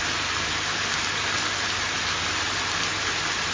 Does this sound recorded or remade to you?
recorded